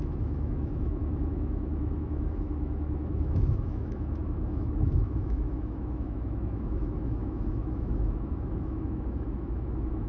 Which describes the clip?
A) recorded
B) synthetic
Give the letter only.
B